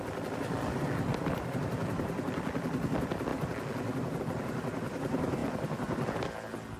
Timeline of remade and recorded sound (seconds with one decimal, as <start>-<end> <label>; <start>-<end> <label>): 0.0-6.8 recorded